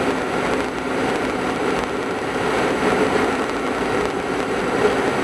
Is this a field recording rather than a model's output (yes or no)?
yes